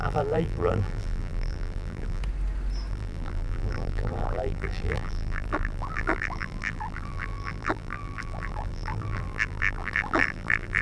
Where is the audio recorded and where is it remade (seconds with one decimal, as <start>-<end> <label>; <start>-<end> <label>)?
0.0-2.2 remade; 2.2-2.9 recorded; 2.9-10.8 remade